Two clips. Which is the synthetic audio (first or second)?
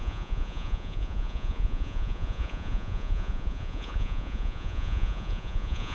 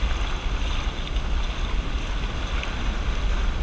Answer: first